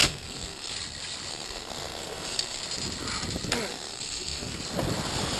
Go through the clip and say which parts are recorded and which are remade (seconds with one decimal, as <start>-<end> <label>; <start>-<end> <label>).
0.0-0.7 remade; 0.7-1.3 recorded; 1.3-2.6 remade; 2.6-3.7 recorded; 3.7-4.6 remade; 4.6-5.4 recorded